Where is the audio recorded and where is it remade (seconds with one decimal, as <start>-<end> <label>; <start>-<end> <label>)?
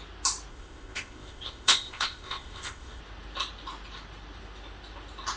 0.0-0.5 recorded; 0.5-3.0 remade; 3.0-5.4 recorded